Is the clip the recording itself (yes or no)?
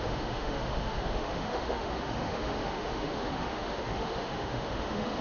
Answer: no